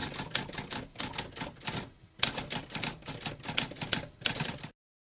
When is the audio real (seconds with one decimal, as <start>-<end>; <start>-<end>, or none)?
0.0-5.1